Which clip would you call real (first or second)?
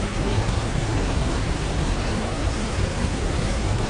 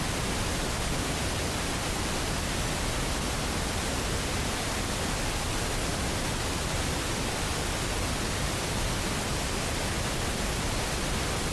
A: second